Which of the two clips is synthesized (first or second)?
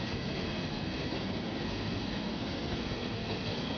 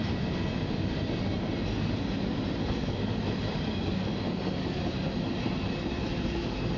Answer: first